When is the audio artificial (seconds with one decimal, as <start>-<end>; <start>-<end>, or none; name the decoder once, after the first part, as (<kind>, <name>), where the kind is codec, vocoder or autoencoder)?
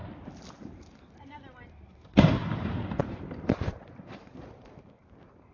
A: 0.0-5.5 (vocoder, BigVGAN v2)